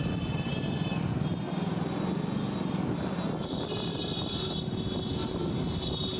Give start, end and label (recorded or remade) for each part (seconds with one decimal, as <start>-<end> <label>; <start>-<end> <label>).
0.0-6.2 recorded